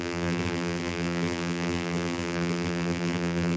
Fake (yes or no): yes